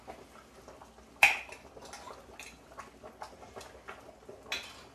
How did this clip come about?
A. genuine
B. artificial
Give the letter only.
A